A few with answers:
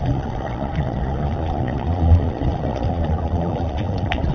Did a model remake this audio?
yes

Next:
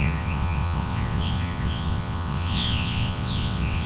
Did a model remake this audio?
yes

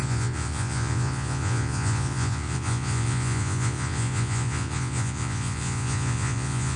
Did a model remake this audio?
yes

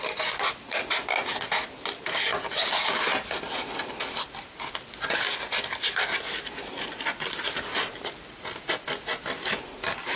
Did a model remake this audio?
no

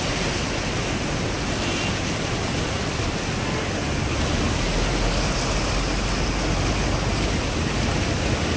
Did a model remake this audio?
no